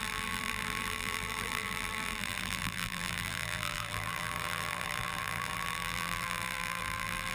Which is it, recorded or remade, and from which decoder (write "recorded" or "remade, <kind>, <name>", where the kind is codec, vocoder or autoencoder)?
remade, vocoder, BigVGAN v2